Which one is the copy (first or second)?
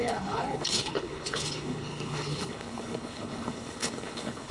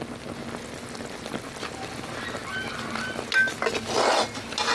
first